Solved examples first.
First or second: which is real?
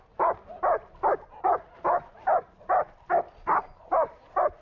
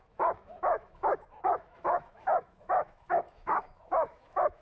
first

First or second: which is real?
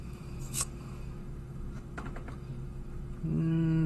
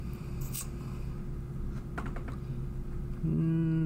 second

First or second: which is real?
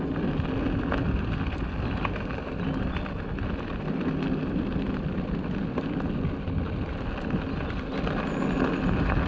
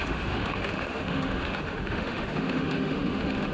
first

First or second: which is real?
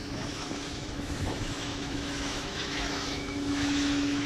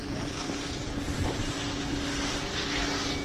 second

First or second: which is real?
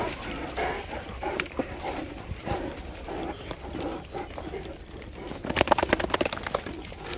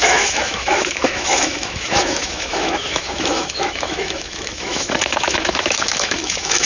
first